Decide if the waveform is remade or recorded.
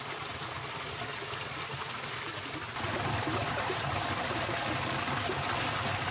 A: recorded